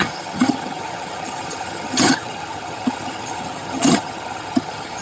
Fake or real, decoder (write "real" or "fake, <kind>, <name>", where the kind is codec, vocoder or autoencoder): fake, vocoder, HiFi-GAN